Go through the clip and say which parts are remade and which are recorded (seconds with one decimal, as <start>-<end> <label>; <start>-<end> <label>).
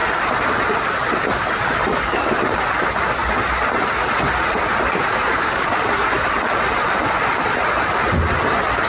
0.0-8.9 recorded